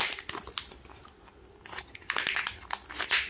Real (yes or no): yes